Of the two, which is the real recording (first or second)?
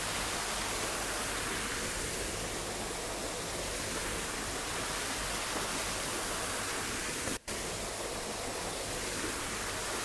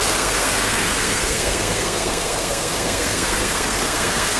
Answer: first